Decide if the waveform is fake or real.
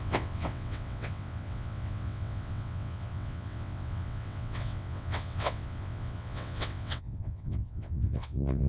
fake